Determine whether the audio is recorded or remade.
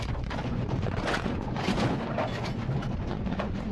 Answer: remade